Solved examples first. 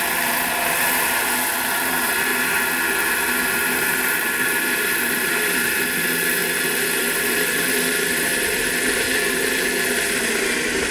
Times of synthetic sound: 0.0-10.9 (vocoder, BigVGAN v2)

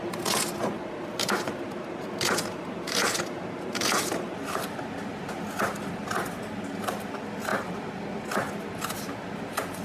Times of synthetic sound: none

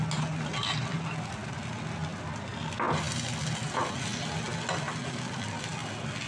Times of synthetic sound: 0.5-1.6 (vocoder, BigVGAN v2)